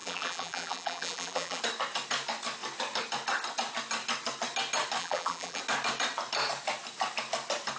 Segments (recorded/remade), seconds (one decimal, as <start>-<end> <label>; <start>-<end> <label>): 0.0-1.6 remade; 1.6-5.0 recorded; 5.0-5.6 remade; 5.6-7.8 recorded